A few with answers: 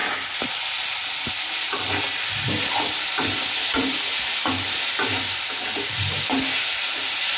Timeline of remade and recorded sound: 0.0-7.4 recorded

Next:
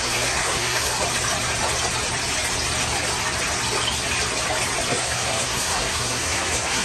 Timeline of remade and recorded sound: 0.0-1.0 remade; 1.0-4.9 recorded; 4.9-6.8 remade

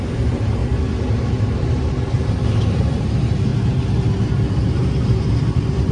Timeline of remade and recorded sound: 0.0-0.6 remade; 0.6-1.3 recorded; 1.3-3.5 remade; 3.5-4.8 recorded; 4.8-5.9 remade

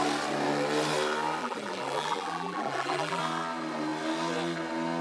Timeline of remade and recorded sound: 0.0-1.4 recorded; 1.4-3.2 remade; 3.2-5.0 recorded

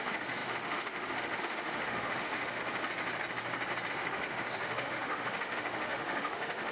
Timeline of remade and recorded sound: 0.0-2.6 remade; 2.6-3.9 recorded; 3.9-6.7 remade